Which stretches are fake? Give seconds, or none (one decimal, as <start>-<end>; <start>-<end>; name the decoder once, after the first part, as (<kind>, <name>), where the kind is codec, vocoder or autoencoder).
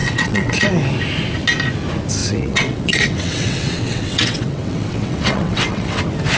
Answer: 0.0-0.7 (vocoder, WaveNeXt); 2.2-6.0